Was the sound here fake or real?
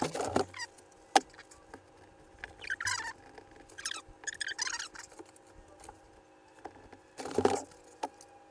real